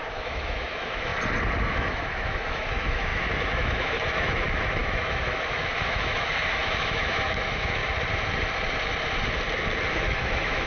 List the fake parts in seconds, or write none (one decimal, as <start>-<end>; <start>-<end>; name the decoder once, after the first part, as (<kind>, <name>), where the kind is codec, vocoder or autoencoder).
0.0-1.1 (autoencoder, DAC-VAE); 1.7-7.8; 9.9-10.7